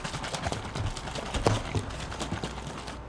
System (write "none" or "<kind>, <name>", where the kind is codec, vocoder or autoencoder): none